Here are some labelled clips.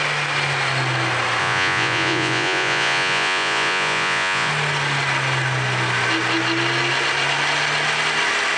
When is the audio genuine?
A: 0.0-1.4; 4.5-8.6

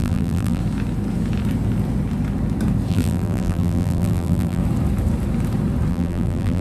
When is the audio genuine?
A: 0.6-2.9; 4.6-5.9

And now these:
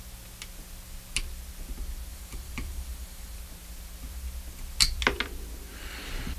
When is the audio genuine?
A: 0.0-2.1; 3.4-6.4